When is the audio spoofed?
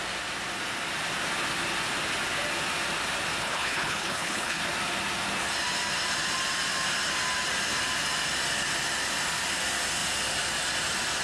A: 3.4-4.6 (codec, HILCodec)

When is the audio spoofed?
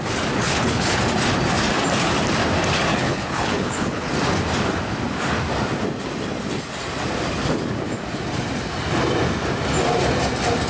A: 0.4-1.0 (codec, HILCodec); 2.9-4.1